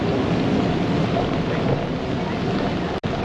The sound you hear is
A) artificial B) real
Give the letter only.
B